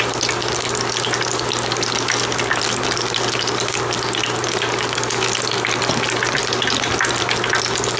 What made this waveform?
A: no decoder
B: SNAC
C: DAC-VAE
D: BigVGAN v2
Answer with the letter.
A